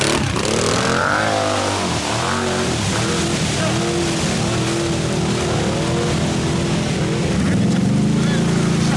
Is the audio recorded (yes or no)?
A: yes